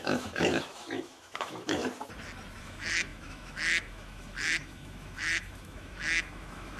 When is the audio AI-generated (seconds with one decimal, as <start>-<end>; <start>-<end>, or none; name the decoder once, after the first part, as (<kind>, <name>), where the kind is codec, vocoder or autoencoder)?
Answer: 0.0-1.8 (autoencoder, DAC-VAE); 2.6-6.8